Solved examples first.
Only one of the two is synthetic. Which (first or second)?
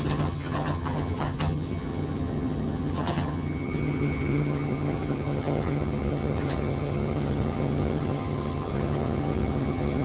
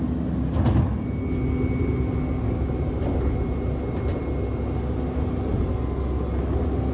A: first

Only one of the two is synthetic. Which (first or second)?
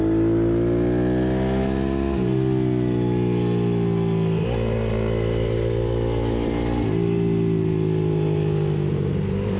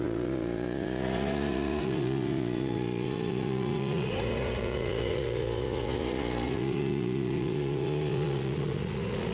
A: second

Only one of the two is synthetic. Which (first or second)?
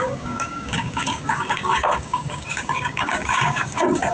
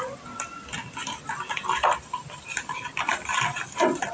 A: first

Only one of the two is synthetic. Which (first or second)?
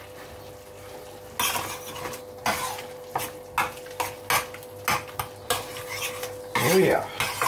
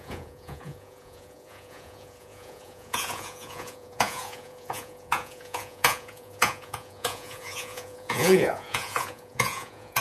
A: second